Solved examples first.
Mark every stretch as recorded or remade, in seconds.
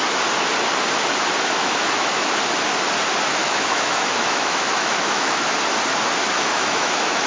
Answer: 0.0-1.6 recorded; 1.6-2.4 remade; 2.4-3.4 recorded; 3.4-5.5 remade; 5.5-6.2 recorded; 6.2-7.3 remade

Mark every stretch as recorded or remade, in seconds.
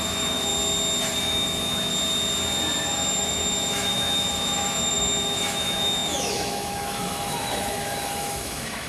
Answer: 0.0-0.5 remade; 0.5-1.2 recorded; 1.2-1.9 remade; 1.9-2.8 recorded; 2.8-8.9 remade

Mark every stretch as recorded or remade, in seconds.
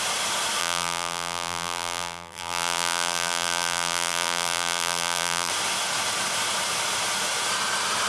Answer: 0.0-0.6 recorded; 0.6-5.5 remade; 5.5-8.1 recorded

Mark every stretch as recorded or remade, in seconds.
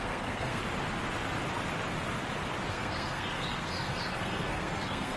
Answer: 0.0-0.6 remade; 0.6-2.7 recorded; 2.7-5.2 remade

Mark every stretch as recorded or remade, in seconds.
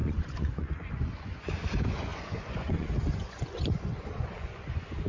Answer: 0.0-5.1 remade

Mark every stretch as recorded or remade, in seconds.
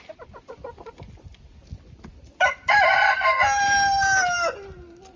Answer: 0.0-5.2 recorded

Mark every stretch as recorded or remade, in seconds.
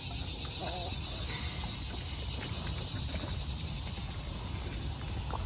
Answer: 0.0-5.5 recorded